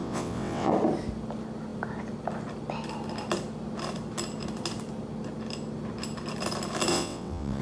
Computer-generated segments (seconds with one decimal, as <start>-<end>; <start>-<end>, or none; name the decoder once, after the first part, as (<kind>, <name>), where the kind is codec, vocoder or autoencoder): 0.0-0.7 (vocoder, WaveNeXt); 6.9-7.6